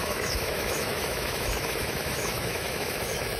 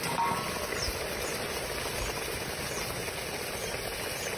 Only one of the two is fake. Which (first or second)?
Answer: first